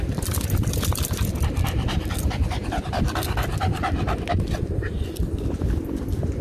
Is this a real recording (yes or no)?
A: no